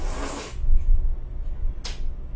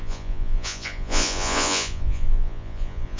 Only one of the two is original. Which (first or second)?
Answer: first